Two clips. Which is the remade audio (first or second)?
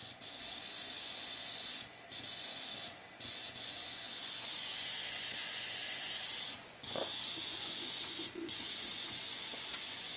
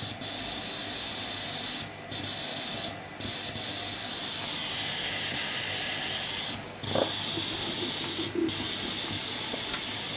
first